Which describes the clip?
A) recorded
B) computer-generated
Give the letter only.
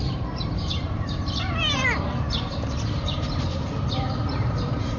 B